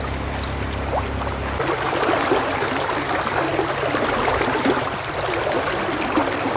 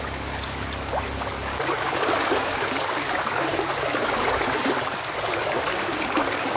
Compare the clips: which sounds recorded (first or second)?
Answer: first